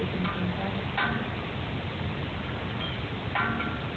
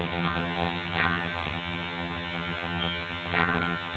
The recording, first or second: first